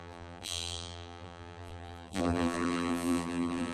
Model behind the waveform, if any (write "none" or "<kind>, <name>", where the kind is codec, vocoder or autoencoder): vocoder, BigVGAN v2